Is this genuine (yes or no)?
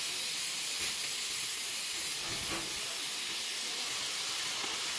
yes